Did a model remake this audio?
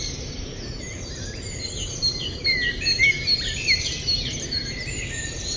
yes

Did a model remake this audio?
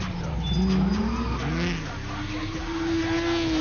no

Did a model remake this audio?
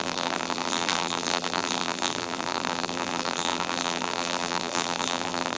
yes